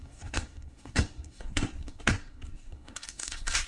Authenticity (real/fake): fake